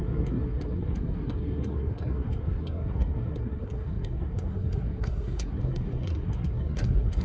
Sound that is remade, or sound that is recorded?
remade